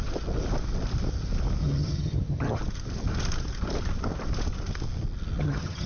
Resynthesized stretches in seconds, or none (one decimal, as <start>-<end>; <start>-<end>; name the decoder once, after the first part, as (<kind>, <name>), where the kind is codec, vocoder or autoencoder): 1.6-2.6 (vocoder, HiFi-GAN); 5.4-5.9